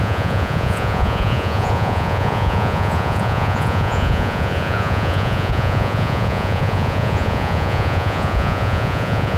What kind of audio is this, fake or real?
fake